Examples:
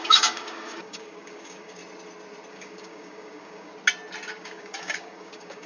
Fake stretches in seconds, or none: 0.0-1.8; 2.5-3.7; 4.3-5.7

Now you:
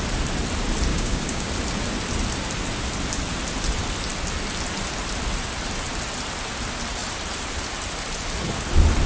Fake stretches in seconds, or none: 0.9-1.5